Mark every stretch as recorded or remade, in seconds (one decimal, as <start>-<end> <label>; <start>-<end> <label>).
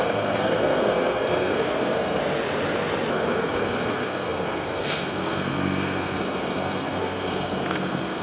0.0-2.2 remade; 2.2-3.1 recorded; 3.1-8.2 remade